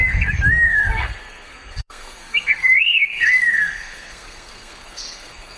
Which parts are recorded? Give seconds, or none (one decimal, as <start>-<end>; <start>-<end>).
none